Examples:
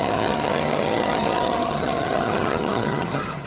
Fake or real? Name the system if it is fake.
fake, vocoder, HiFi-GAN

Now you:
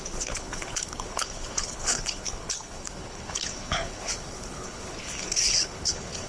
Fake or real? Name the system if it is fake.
fake, codec, HILCodec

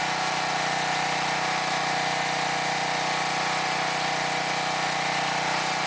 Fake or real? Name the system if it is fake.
real